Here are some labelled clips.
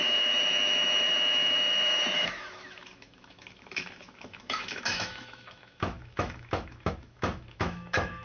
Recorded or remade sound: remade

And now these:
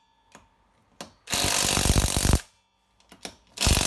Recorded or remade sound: recorded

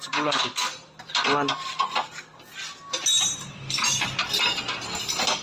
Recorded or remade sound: recorded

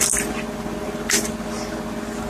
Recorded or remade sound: recorded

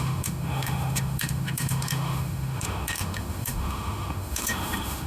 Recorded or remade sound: remade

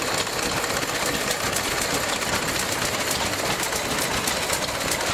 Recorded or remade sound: recorded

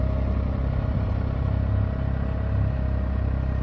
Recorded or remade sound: recorded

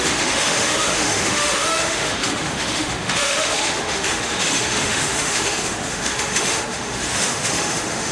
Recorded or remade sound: remade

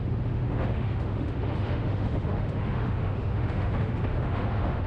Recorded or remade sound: remade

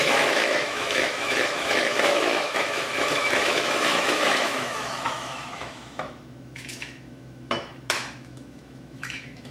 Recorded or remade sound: remade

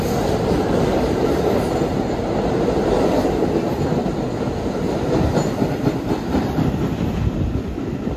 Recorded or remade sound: recorded